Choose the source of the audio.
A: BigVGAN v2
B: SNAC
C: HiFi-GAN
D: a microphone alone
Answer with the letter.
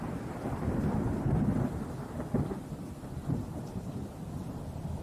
A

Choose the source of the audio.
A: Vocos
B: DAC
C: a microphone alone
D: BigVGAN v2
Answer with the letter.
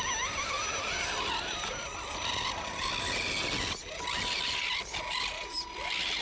C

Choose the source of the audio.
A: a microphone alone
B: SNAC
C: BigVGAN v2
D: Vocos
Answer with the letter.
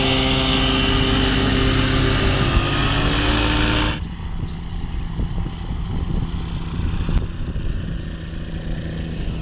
A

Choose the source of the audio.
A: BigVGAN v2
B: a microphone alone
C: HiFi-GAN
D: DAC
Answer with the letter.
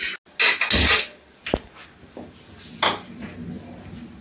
B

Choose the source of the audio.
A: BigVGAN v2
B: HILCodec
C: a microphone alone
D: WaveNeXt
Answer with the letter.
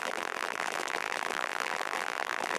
A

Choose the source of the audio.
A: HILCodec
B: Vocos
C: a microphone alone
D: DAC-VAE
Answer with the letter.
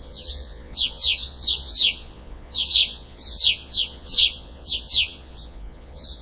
B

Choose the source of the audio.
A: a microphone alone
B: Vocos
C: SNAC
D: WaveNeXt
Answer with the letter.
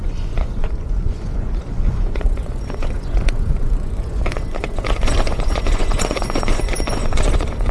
B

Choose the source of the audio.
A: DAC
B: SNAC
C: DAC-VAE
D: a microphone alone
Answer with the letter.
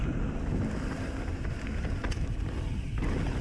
D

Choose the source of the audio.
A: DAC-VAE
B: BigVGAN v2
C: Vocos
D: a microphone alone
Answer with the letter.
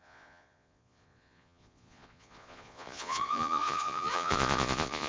C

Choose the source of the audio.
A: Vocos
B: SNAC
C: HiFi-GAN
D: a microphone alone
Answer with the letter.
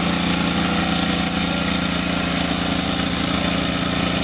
D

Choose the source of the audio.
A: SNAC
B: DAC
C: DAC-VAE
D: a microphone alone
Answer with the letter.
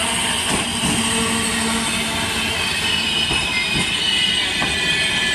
D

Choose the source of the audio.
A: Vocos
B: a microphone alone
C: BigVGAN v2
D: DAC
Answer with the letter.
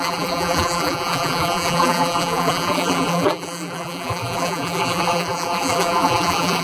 C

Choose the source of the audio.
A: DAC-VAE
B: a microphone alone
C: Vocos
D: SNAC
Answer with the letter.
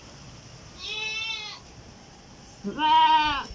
B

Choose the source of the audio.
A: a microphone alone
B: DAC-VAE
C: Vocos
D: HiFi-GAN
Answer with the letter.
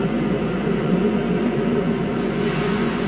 C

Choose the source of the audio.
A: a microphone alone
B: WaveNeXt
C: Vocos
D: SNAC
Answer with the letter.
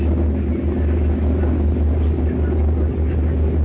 A